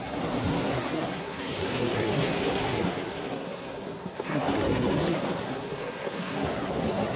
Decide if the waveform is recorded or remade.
remade